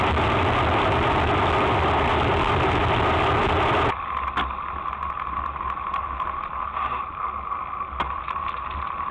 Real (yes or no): yes